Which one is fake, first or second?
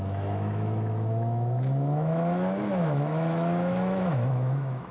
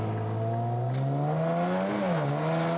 first